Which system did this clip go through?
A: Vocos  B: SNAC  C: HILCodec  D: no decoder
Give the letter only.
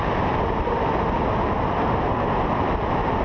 D